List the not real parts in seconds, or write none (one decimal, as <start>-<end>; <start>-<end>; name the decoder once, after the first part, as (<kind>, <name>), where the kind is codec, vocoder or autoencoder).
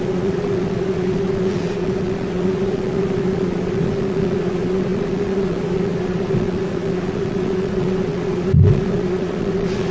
0.0-9.9 (vocoder, Vocos)